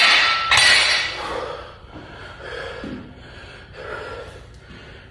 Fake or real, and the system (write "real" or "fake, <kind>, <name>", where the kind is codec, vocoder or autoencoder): real